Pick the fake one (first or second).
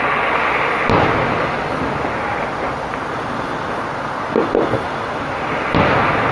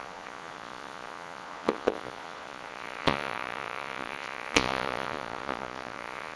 second